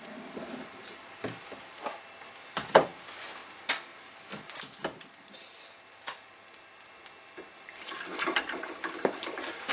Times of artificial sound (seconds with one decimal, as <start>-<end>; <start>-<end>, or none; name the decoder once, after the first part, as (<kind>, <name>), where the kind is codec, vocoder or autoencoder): none